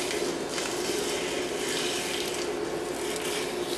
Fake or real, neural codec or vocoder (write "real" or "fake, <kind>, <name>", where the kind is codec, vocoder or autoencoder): real